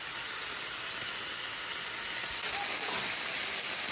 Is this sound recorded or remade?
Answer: recorded